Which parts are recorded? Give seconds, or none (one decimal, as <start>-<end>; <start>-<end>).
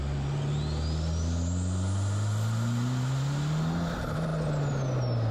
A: 0.0-5.3